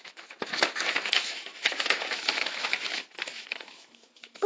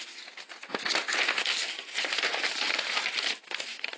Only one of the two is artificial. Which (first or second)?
first